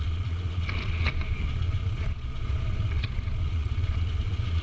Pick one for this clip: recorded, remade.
remade